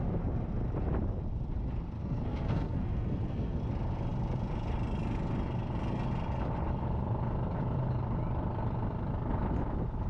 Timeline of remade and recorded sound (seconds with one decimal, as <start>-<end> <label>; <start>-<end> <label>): 0.0-2.0 recorded; 2.0-3.6 remade; 3.6-10.1 recorded